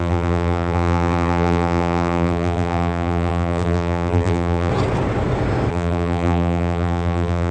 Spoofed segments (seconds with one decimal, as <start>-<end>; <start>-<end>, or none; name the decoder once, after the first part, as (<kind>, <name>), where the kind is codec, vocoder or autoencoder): 0.0-4.7 (vocoder, BigVGAN v2); 5.7-7.5